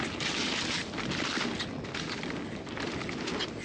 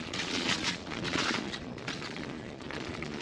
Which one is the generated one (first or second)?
second